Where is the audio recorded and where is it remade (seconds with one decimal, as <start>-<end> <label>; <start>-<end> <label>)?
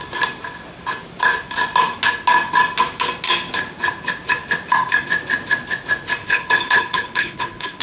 0.0-6.2 recorded; 6.2-7.8 remade